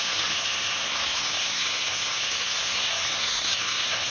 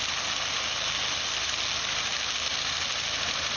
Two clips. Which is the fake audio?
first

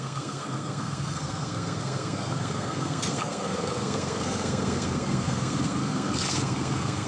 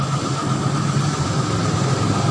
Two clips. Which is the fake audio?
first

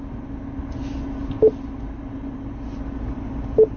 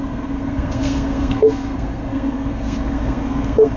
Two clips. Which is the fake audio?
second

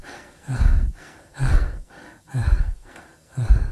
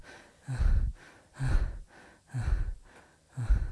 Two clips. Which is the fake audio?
first